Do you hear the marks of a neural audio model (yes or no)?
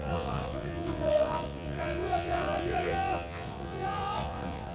yes